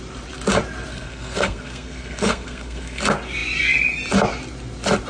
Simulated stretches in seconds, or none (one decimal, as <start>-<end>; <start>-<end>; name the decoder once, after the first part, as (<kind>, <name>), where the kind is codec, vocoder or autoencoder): 0.9-3.0 (codec, SNAC)